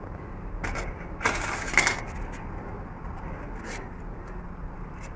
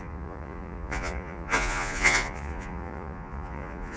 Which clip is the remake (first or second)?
second